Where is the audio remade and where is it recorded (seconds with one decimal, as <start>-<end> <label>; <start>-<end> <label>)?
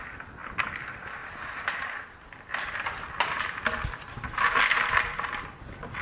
0.0-1.2 recorded; 1.2-2.5 remade; 2.5-6.0 recorded